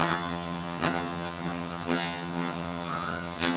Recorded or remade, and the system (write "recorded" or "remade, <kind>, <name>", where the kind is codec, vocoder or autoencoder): remade, vocoder, HiFi-GAN